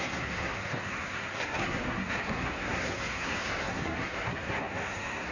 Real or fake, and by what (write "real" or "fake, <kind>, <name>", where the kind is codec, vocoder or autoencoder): fake, codec, SNAC